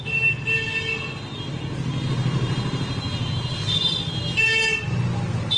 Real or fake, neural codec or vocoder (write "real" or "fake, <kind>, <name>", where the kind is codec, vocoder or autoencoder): real